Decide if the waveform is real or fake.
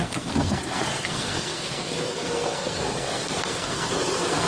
fake